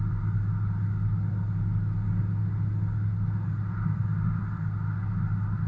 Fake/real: real